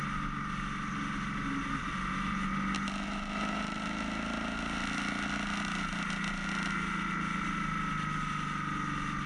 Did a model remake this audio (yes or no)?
no